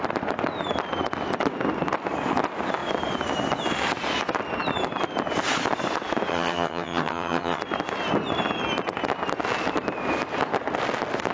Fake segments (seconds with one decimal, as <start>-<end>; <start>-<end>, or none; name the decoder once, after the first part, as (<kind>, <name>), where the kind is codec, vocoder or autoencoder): 6.3-7.6 (vocoder, HiFi-GAN)